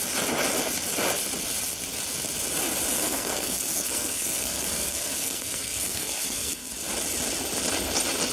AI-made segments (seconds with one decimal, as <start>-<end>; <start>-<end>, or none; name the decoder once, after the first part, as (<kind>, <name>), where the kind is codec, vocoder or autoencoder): 2.9-6.7 (codec, SNAC)